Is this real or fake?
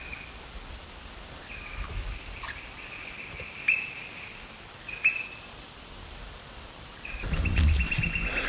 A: real